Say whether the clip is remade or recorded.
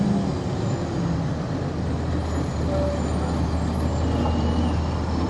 recorded